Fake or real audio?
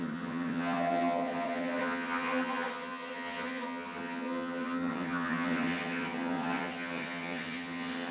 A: fake